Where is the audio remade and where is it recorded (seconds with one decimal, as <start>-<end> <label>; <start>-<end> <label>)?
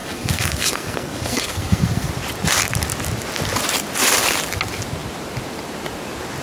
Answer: 0.0-2.1 remade; 2.1-6.4 recorded